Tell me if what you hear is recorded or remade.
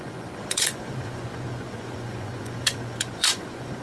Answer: remade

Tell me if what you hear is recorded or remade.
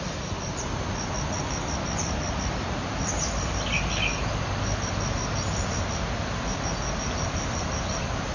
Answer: recorded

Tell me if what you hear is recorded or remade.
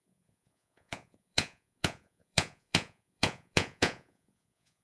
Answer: remade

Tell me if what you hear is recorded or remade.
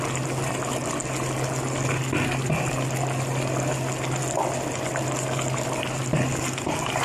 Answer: recorded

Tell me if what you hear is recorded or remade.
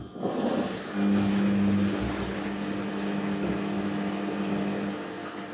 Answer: recorded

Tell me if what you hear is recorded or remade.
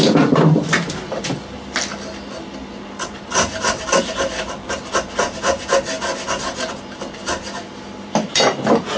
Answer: recorded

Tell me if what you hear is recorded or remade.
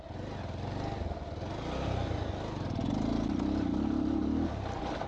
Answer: recorded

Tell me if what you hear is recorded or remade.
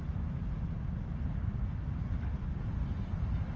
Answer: recorded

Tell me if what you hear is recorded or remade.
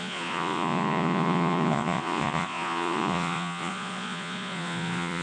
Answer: remade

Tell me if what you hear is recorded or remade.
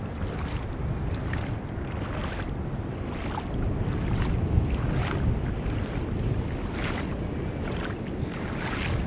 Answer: recorded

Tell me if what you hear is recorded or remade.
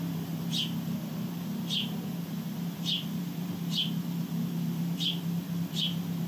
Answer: recorded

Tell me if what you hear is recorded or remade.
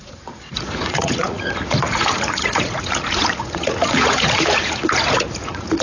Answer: remade